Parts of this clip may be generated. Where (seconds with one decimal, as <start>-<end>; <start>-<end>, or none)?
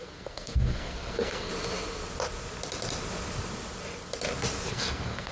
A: 0.0-1.5; 4.7-5.3